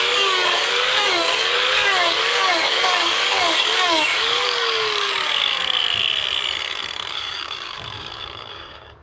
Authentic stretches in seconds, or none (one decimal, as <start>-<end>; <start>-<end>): 5.6-7.1